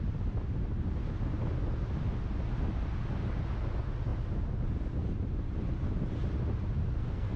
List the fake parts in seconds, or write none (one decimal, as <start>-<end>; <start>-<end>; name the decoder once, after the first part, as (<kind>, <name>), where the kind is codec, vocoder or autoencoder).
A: 6.8-7.4 (codec, SNAC)